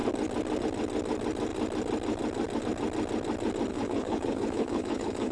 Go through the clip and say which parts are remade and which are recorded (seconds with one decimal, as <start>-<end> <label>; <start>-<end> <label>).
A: 0.0-3.7 recorded; 3.7-5.3 remade